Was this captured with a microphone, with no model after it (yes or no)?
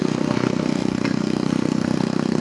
no